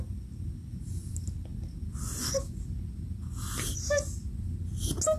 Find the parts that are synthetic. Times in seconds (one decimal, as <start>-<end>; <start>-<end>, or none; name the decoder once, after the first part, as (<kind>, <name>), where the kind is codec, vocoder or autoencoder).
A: none